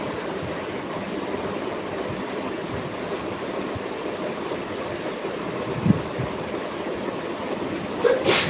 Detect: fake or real real